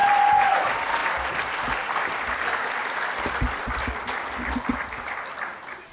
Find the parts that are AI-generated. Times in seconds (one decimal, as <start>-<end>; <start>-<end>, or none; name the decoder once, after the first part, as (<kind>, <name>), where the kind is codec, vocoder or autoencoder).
0.6-4.0 (vocoder, BigVGAN v2); 4.7-5.9